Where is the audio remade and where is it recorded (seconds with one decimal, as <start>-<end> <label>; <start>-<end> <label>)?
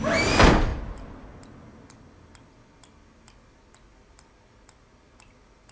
0.0-5.7 recorded